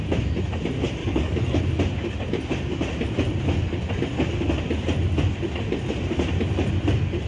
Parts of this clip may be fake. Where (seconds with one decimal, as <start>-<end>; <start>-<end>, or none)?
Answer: 1.0-1.6